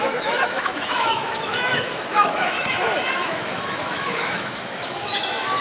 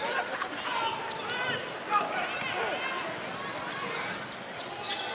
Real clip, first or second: second